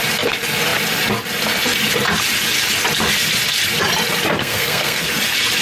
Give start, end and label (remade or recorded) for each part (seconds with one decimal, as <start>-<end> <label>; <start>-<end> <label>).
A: 0.0-4.4 recorded; 4.4-5.1 remade; 5.1-5.6 recorded